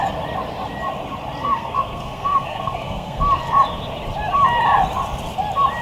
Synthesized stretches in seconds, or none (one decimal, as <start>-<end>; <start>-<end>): 1.4-3.2